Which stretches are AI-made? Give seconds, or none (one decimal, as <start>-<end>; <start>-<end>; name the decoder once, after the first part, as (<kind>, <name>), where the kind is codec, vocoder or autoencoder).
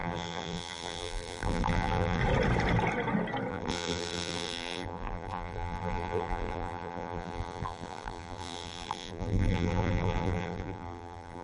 0.0-2.2 (vocoder, BigVGAN v2); 3.5-11.4